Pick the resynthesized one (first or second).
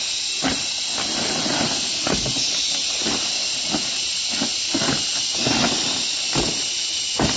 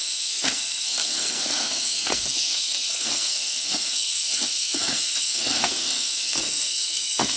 second